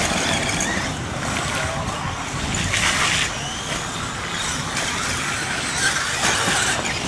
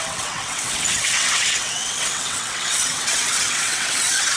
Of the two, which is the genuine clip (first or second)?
first